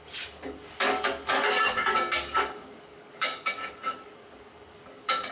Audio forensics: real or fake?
fake